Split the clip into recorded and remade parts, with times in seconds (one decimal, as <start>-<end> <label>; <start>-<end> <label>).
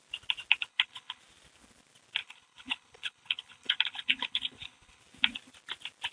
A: 0.0-0.7 recorded; 0.7-1.2 remade; 1.2-2.2 recorded; 2.2-5.0 remade; 5.0-6.1 recorded